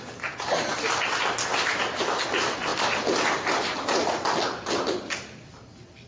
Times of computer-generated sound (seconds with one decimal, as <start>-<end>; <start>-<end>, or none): none